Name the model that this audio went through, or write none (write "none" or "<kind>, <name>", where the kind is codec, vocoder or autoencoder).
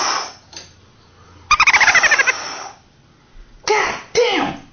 none